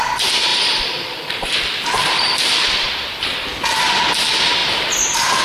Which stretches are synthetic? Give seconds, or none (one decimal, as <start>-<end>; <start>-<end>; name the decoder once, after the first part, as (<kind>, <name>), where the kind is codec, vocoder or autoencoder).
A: 0.5-2.9 (vocoder, BigVGAN v2)